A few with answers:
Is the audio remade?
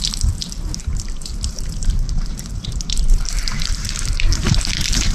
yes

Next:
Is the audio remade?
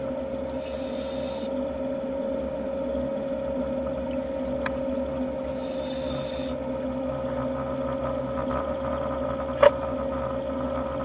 no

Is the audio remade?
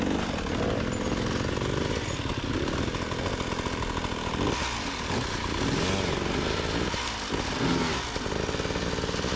no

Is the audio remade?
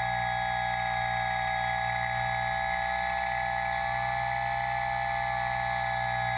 no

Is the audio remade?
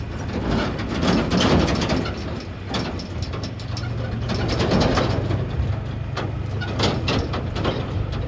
no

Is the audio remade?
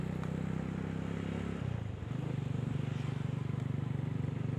no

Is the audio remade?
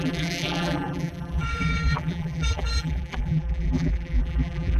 yes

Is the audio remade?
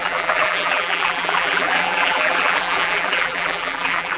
yes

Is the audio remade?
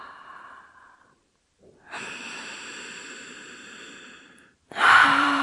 yes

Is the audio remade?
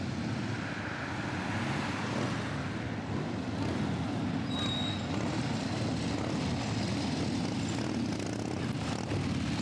no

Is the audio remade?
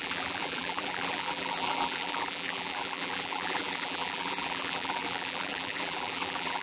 yes